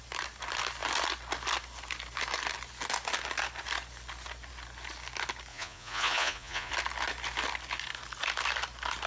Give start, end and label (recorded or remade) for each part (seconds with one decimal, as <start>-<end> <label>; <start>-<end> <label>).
0.0-5.5 recorded; 5.5-6.7 remade; 6.7-9.1 recorded